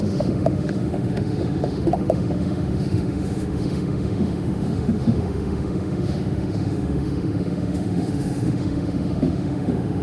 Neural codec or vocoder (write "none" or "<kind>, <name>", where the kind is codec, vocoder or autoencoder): autoencoder, DAC-VAE